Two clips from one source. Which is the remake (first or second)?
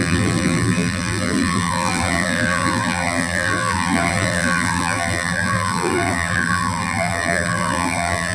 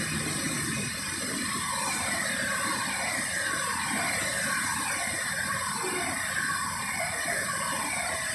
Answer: first